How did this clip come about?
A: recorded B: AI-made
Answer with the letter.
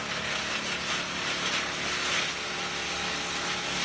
A